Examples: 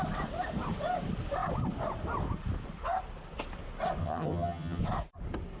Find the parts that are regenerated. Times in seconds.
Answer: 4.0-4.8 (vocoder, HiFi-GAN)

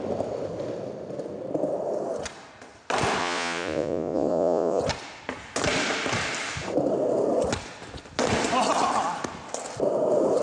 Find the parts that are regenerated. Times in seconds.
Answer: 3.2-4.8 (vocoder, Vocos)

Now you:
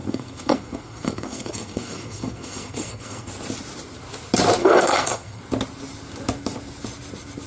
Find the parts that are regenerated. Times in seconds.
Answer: 0.0-3.3 (codec, SNAC); 4.6-5.4

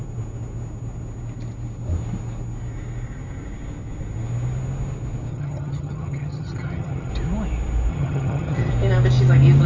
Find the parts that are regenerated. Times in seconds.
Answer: 5.3-7.1 (vocoder, HiFi-GAN); 7.9-8.7

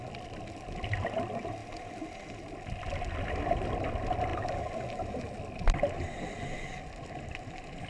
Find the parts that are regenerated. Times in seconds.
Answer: none

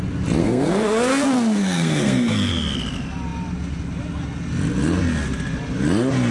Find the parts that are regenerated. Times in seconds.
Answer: 0.4-2.5 (codec, SNAC)